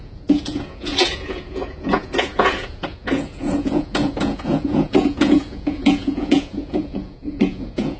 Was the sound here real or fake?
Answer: fake